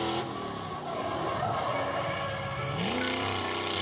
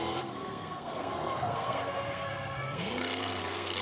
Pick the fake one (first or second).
second